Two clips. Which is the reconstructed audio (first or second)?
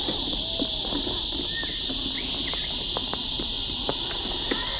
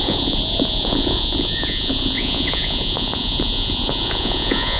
second